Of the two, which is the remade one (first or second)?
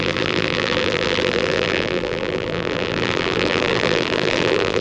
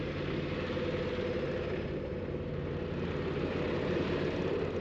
first